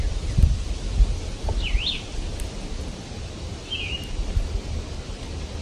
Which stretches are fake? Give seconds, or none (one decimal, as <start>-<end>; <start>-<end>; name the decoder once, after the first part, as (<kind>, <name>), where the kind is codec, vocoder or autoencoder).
none